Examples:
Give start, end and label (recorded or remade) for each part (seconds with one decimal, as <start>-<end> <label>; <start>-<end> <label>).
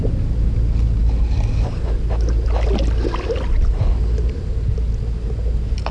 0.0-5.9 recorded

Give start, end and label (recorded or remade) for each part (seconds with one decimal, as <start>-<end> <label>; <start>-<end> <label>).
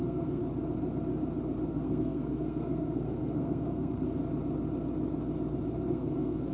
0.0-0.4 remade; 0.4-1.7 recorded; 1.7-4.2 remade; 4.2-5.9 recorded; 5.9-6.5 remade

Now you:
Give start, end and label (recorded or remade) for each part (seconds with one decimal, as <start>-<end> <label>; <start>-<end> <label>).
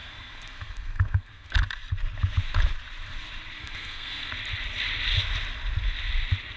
0.0-1.5 remade; 1.5-3.6 recorded; 3.6-4.3 remade; 4.3-6.6 recorded